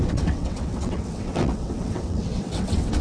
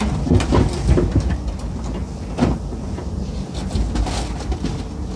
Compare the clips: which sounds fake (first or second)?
first